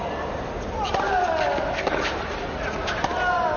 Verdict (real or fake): real